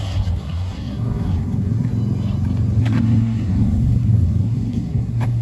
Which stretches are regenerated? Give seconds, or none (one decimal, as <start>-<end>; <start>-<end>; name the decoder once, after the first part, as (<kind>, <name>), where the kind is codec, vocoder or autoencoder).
0.0-1.9 (codec, SNAC); 2.8-5.4